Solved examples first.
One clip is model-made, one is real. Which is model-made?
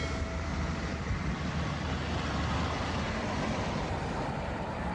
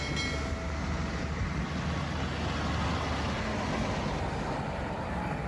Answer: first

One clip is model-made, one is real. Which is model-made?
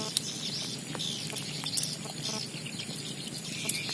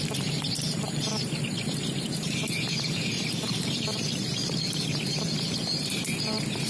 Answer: second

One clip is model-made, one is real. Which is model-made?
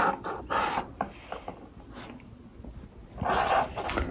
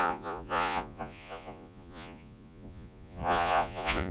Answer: second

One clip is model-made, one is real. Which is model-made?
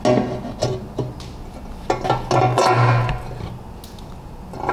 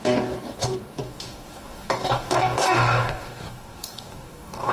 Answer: second